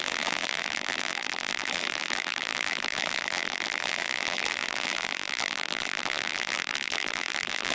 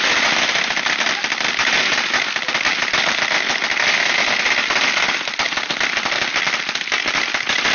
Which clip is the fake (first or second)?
first